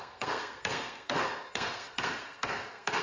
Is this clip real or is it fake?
fake